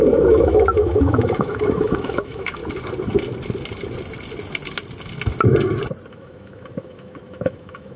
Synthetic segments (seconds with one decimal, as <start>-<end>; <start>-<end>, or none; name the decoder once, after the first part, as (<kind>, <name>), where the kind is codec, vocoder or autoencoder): 0.0-2.6 (autoencoder, DAC-VAE); 6.1-8.0